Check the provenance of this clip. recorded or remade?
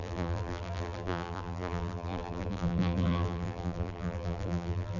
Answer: remade